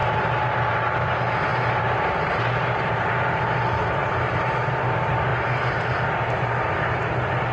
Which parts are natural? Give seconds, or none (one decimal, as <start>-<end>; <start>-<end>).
1.1-1.5; 4.5-7.5